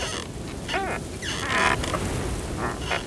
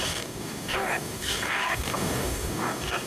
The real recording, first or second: first